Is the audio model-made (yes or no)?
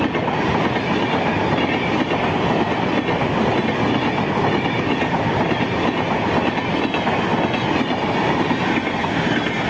no